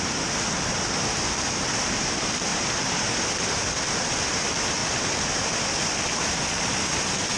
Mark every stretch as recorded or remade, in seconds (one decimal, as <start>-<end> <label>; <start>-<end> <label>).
0.0-2.5 recorded; 2.5-3.5 remade; 3.5-4.8 recorded; 4.8-5.6 remade; 5.6-7.4 recorded